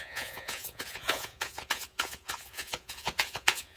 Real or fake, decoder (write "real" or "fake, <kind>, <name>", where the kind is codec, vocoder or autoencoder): fake, vocoder, Vocos